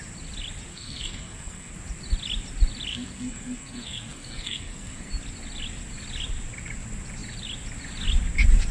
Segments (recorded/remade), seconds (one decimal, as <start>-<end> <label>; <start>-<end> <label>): 0.0-0.7 recorded; 0.7-1.7 remade; 1.7-2.9 recorded; 2.9-5.1 remade; 5.1-8.7 recorded